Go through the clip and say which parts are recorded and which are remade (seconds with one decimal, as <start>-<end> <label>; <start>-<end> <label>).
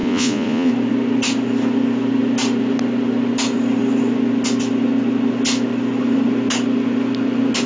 0.0-0.7 remade; 0.7-7.7 recorded